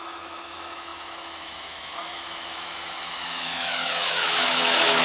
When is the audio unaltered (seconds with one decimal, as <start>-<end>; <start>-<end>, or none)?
none